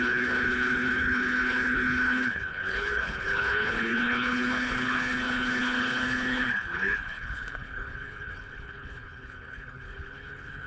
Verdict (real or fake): fake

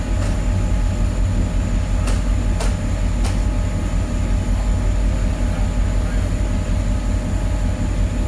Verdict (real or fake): real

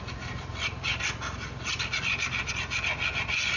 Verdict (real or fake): real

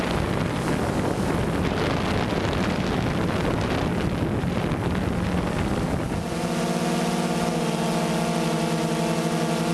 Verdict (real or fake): real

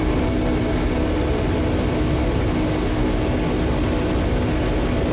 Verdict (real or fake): real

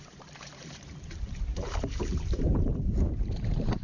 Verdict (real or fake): fake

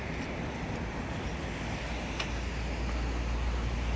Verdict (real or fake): real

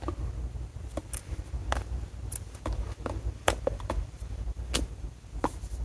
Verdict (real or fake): real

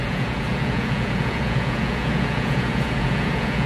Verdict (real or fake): fake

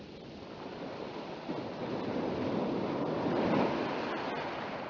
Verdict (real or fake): real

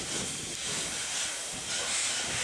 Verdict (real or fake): real